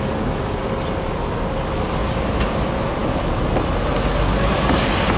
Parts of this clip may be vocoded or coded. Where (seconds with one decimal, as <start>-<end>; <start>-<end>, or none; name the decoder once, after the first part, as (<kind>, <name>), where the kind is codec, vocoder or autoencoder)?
none